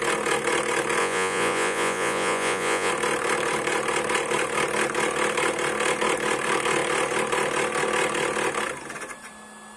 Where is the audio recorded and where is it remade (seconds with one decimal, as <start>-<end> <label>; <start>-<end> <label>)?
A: 0.0-1.0 recorded; 1.0-2.9 remade; 2.9-9.8 recorded